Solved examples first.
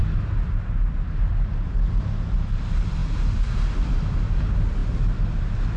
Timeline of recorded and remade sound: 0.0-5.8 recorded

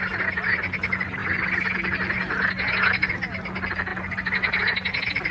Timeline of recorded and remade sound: 0.0-5.3 recorded

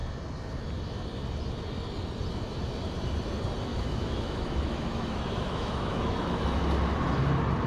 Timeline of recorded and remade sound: 0.0-3.7 recorded; 3.7-6.4 remade; 6.4-7.7 recorded